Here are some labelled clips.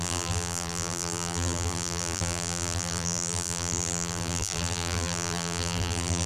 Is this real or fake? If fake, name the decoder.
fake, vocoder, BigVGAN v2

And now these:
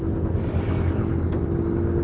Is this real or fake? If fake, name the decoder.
real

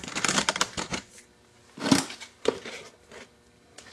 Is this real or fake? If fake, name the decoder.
real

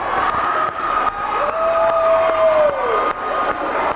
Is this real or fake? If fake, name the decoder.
real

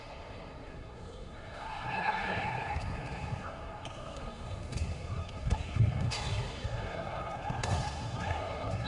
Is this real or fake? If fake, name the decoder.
fake, codec, SNAC